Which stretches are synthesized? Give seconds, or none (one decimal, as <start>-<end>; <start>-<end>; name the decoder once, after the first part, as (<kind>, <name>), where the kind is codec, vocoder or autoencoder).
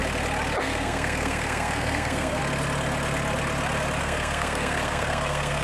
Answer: 0.6-2.4 (codec, SNAC); 4.0-5.6